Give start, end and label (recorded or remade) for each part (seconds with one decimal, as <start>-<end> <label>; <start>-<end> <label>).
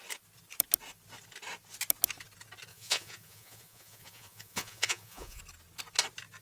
0.0-2.7 recorded; 2.7-5.4 remade; 5.4-6.4 recorded